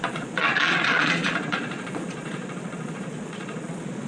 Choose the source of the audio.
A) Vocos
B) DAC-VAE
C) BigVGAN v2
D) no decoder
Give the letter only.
A